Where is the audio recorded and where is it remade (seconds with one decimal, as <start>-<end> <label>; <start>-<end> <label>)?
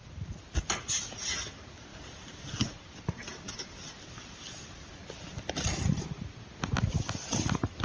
0.0-1.0 remade; 1.0-1.9 recorded; 1.9-2.5 remade; 2.5-7.8 recorded